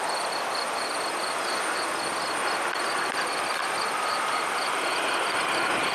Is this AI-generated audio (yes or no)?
no